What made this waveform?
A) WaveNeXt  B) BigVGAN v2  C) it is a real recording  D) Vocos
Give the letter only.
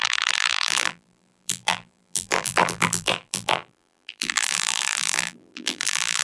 B